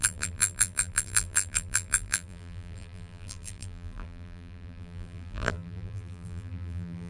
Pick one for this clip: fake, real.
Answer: fake